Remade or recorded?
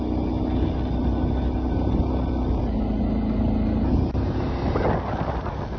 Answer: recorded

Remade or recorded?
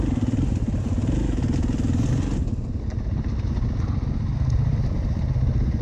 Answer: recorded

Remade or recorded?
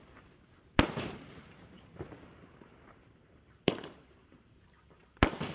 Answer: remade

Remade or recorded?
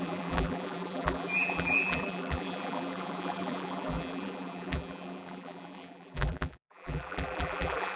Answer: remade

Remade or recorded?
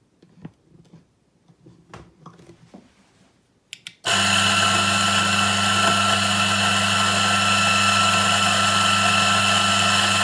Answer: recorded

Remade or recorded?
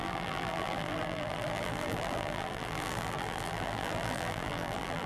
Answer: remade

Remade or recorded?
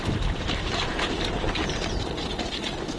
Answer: remade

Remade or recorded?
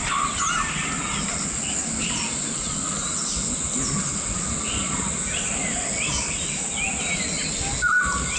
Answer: recorded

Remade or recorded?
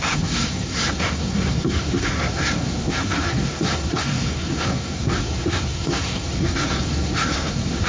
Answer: remade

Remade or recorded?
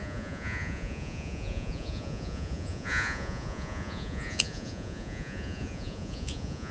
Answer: remade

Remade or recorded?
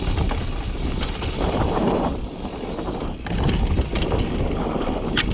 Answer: recorded